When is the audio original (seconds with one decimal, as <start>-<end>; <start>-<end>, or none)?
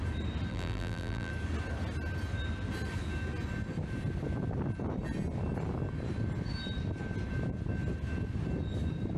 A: 0.0-0.5; 1.3-9.2